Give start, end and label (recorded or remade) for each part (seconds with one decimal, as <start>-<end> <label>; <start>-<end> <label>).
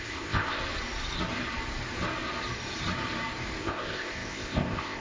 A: 0.0-0.6 remade; 0.6-3.6 recorded; 3.6-5.0 remade